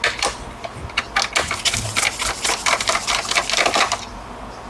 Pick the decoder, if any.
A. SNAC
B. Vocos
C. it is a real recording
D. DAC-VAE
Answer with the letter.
C